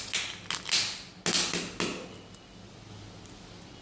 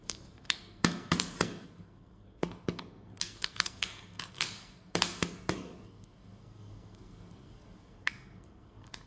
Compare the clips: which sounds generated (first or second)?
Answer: second